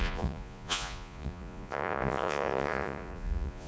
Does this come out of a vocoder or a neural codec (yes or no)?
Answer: yes